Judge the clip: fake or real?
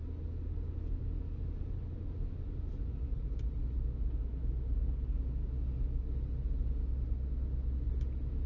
real